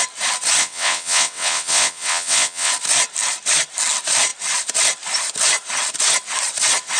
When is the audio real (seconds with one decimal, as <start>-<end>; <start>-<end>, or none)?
0.0-0.6; 2.7-7.0